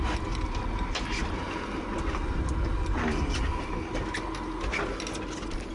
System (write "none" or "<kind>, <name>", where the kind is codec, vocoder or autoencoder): none